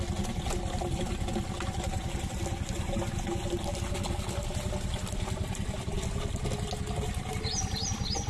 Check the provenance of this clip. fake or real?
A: real